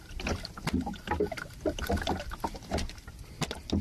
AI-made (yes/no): no